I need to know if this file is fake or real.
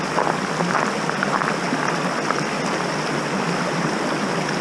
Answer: real